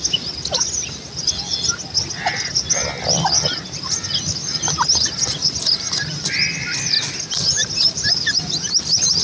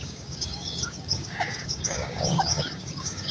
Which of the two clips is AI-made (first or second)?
second